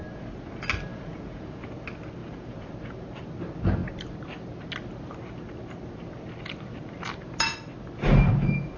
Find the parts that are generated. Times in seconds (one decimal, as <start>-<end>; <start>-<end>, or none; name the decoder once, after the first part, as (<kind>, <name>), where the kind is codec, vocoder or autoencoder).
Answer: 0.9-1.7 (vocoder, Vocos); 2.2-2.7